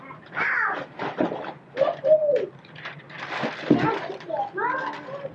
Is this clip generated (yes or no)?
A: no